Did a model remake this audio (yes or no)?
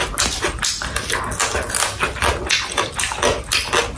no